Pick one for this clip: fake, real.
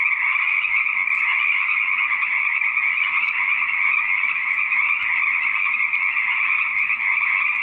real